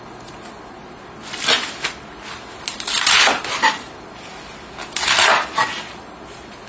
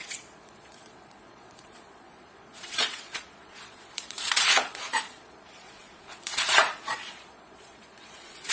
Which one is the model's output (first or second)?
second